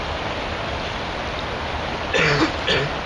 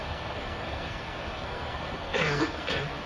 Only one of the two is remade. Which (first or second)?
second